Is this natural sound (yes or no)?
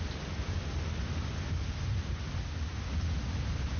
yes